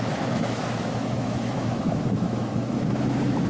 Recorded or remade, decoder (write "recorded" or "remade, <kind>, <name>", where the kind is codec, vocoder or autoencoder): remade, autoencoder, DAC-VAE